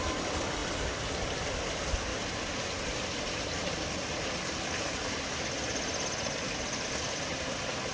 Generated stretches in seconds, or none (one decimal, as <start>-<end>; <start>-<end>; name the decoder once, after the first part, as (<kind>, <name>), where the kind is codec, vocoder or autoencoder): none